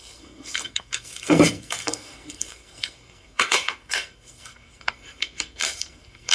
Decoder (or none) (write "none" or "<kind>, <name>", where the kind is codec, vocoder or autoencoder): codec, SNAC